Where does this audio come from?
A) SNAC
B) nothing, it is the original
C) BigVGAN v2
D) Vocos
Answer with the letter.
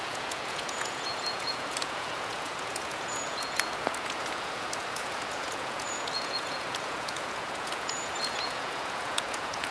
D